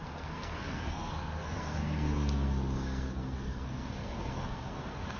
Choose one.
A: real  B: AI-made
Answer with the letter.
B